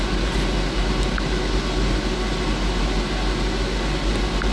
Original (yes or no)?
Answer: yes